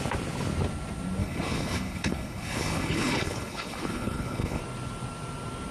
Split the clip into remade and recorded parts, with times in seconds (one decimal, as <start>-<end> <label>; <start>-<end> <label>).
0.0-1.2 recorded; 1.2-4.6 remade; 4.6-5.7 recorded